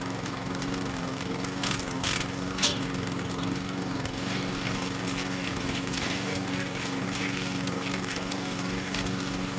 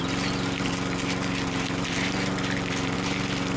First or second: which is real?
second